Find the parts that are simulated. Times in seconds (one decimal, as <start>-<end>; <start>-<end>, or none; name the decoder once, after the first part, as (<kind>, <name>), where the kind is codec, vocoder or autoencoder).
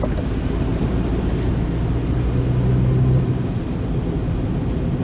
none